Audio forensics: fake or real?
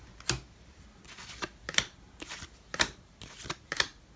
real